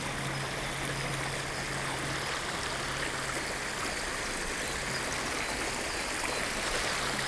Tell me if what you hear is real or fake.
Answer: real